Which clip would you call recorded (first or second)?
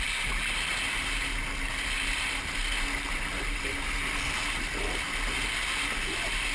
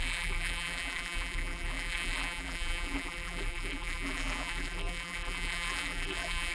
first